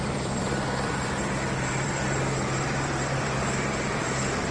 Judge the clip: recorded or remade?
remade